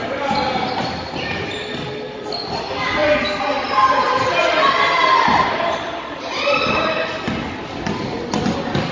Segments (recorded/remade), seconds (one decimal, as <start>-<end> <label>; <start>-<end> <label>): 0.0-8.9 recorded